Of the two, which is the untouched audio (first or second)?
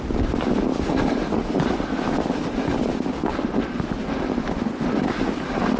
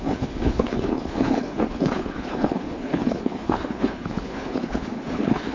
first